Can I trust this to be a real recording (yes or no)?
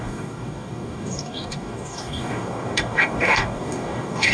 no